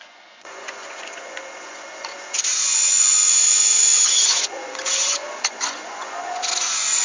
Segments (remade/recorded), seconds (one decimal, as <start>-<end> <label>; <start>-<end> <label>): 0.0-7.0 remade